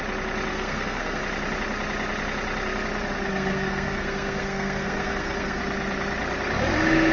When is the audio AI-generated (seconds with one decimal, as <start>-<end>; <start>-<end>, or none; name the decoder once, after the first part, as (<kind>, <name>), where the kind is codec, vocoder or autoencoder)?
0.5-1.2 (codec, SNAC); 3.3-5.6